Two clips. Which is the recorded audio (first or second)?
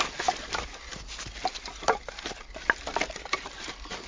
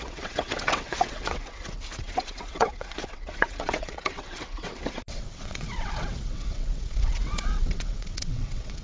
first